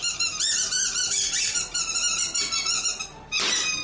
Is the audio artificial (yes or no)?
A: no